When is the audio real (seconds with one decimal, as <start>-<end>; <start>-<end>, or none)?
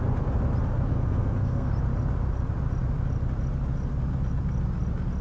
0.0-0.9; 1.7-5.2